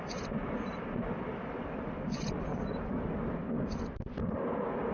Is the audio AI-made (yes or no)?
no